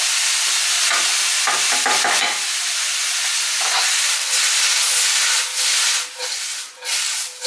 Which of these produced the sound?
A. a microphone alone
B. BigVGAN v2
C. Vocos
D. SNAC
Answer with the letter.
A